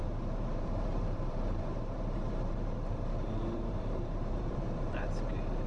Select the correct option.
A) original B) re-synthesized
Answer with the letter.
B